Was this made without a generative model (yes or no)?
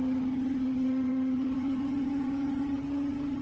no